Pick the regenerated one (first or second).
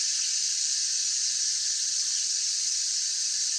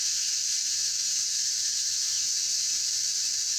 second